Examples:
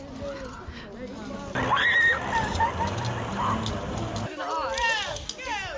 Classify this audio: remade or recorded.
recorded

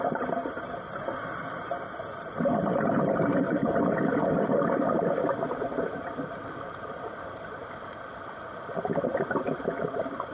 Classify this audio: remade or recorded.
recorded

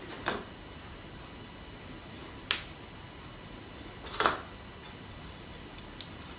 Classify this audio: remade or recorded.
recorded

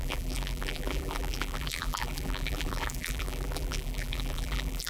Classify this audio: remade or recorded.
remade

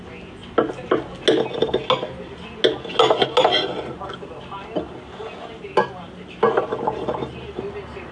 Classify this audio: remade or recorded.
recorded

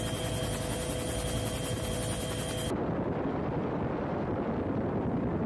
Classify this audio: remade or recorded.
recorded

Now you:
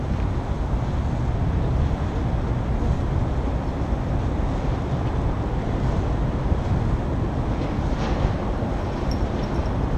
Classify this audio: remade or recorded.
recorded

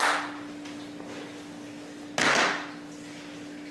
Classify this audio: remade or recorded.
recorded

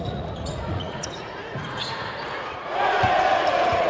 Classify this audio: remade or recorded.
remade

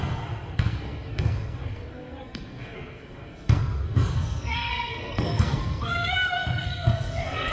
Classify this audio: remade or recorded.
remade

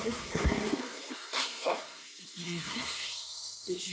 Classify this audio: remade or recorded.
remade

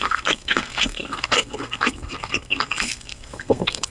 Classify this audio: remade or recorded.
remade